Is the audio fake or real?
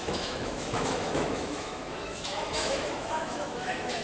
fake